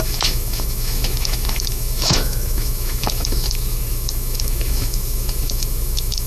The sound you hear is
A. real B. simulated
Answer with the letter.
B